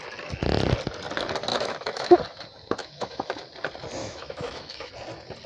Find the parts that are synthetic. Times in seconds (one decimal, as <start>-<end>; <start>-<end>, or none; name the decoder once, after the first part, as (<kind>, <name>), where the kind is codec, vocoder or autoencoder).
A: 1.5-2.2 (autoencoder, DAC-VAE); 2.8-3.5; 4.0-4.9